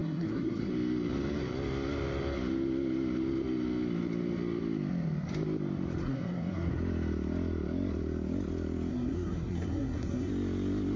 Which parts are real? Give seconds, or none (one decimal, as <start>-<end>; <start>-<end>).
0.7-6.0; 6.7-8.9; 10.3-11.0